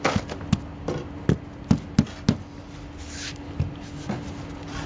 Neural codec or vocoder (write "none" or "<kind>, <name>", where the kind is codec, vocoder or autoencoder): none